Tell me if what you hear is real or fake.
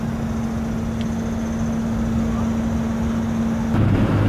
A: real